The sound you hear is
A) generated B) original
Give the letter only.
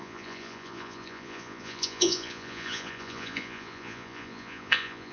A